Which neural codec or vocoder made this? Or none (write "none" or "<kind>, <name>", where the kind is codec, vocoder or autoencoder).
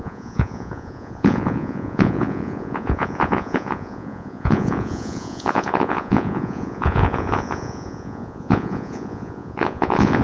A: vocoder, Vocos